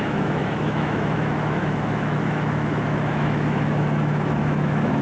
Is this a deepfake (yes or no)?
yes